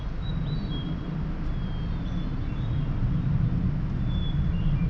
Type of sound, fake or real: real